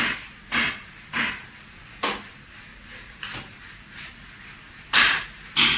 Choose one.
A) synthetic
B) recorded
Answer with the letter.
B